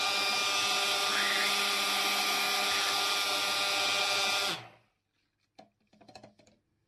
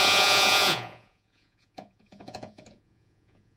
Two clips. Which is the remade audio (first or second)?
second